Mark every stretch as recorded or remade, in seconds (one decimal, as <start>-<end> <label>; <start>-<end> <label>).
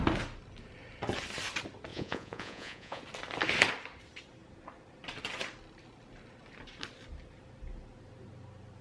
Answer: 0.0-1.9 recorded; 1.9-3.0 remade; 3.0-8.8 recorded